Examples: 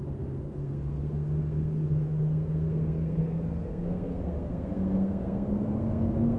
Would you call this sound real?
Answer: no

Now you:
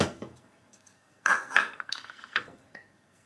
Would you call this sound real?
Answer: no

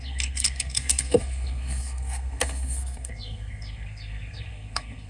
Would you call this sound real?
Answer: no